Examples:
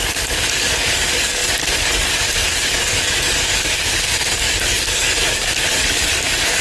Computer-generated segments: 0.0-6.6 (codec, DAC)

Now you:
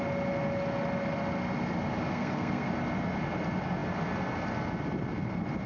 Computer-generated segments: 2.1-2.7 (codec, SNAC)

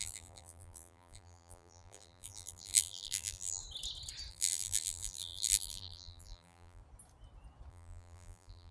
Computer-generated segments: 0.0-3.6 (vocoder, BigVGAN v2); 4.3-6.8; 7.7-8.7

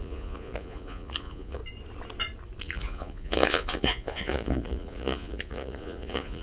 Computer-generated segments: 0.0-1.6 (vocoder, Vocos); 2.6-6.4

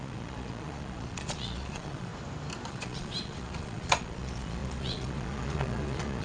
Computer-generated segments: 0.0-2.1 (vocoder, Vocos); 2.7-6.2